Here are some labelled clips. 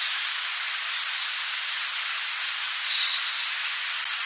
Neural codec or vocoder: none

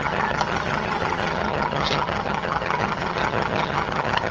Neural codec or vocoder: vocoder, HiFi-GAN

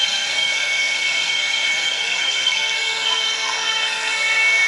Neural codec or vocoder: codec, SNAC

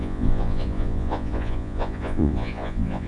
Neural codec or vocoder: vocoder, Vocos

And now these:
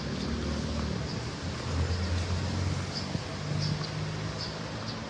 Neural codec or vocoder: none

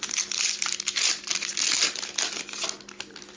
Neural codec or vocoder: none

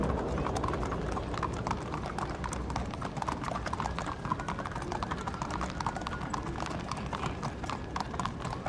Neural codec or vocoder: none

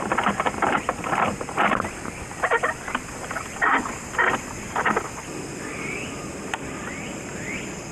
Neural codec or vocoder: none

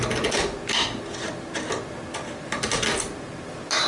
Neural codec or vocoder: none